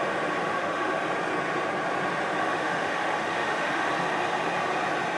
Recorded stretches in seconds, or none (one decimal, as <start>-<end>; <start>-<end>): 0.0-0.4; 1.0-2.4; 3.9-5.2